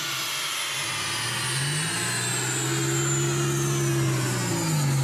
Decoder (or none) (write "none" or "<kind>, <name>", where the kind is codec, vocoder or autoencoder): none